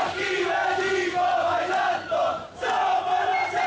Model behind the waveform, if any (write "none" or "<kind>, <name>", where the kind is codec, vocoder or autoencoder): vocoder, BigVGAN v2